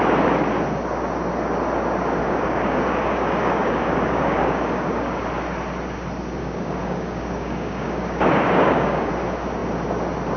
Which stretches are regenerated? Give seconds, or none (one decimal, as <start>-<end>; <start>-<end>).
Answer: 2.2-5.2; 6.4-9.1